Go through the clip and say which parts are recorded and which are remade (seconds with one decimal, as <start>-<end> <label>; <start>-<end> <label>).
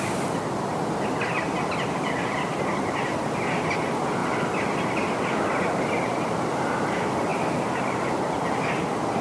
0.0-9.2 recorded